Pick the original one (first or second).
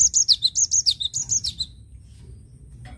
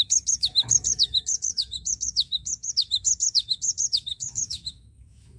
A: first